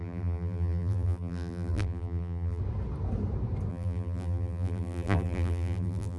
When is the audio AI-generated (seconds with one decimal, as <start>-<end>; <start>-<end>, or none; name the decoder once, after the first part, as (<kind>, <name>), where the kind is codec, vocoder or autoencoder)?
0.0-2.6 (vocoder, BigVGAN v2); 3.7-6.2

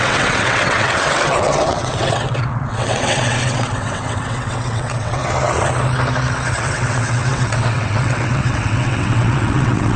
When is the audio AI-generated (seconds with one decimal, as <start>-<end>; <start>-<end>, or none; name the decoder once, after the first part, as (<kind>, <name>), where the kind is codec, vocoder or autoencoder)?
0.0-5.2 (vocoder, WaveNeXt); 6.5-10.0